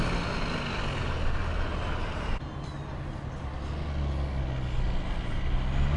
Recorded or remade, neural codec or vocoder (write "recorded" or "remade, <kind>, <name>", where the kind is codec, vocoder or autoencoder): recorded